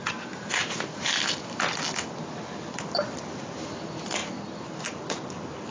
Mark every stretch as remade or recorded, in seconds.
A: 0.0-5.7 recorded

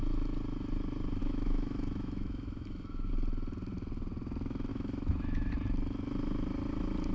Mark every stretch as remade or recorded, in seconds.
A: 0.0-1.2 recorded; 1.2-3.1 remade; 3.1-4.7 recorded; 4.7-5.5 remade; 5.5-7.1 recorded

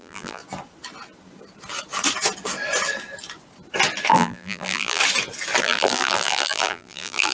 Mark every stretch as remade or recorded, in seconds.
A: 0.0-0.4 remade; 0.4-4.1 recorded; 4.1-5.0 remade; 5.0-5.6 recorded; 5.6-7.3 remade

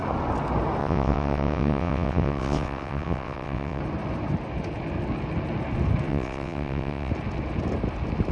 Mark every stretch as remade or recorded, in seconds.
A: 0.0-0.8 recorded; 0.8-3.8 remade; 3.8-6.1 recorded; 6.1-7.1 remade; 7.1-8.3 recorded

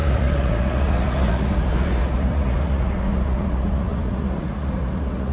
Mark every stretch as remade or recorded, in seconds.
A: 0.0-5.3 remade

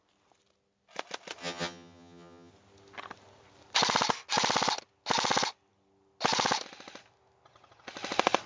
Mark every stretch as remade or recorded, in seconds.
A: 0.0-1.4 recorded; 1.4-2.5 remade; 2.5-8.5 recorded

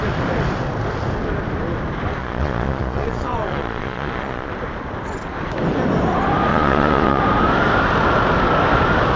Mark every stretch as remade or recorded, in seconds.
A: 0.0-2.2 recorded; 2.2-4.5 remade; 4.5-6.5 recorded; 6.5-7.2 remade; 7.2-9.2 recorded

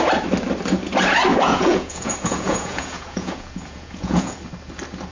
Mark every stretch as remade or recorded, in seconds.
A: 0.0-1.3 recorded; 1.3-4.4 remade; 4.4-5.1 recorded